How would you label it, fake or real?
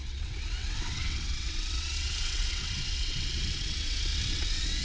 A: fake